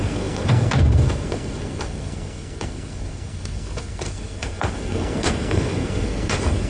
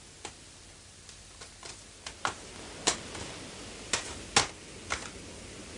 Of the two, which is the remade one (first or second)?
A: first